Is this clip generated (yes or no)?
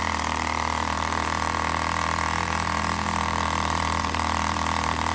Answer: yes